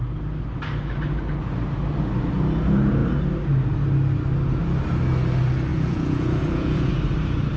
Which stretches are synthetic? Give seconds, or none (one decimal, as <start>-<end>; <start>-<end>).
5.7-6.9